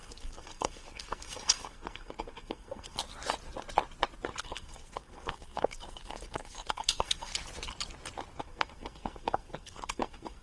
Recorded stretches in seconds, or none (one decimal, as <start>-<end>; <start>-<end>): 3.0-4.4; 7.3-8.4